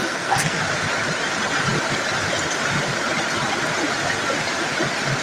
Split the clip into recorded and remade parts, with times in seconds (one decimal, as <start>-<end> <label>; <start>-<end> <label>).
0.0-0.6 remade; 0.6-5.2 recorded

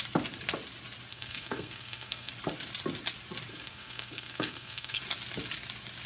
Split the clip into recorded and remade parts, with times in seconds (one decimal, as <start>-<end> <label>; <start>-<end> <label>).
0.0-1.1 recorded; 1.1-2.3 remade; 2.3-3.5 recorded; 3.5-5.0 remade; 5.0-6.1 recorded

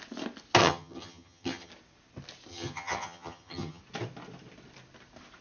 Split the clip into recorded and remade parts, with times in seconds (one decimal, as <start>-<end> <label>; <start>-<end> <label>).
0.0-0.6 recorded; 0.6-1.7 remade; 1.7-2.5 recorded; 2.5-3.8 remade; 3.8-5.4 recorded

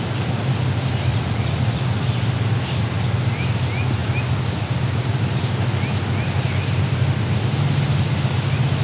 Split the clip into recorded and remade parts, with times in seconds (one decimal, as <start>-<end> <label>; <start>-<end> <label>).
0.0-1.1 recorded; 1.1-1.8 remade; 1.8-8.8 recorded

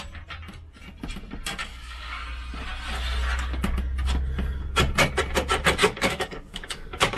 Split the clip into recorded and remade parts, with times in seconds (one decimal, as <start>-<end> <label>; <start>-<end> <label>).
0.0-1.6 recorded; 1.6-2.2 remade; 2.2-5.8 recorded; 5.8-7.2 remade

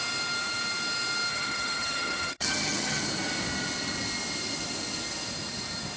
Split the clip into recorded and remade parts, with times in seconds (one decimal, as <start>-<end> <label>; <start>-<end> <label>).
0.0-1.3 recorded; 1.3-3.1 remade; 3.1-6.0 recorded

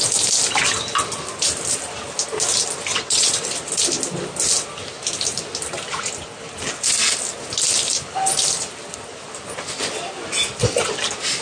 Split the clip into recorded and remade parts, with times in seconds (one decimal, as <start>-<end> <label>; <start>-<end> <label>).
0.0-2.9 recorded; 2.9-3.5 remade; 3.5-11.4 recorded

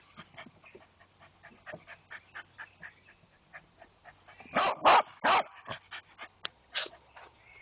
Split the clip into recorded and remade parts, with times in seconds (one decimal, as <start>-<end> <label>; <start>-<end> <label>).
0.0-6.5 recorded; 6.5-7.6 remade